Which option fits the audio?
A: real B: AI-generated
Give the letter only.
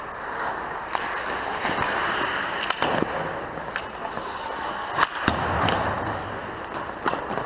A